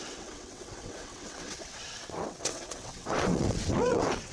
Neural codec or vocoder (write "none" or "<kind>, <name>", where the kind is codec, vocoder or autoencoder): vocoder, WaveNeXt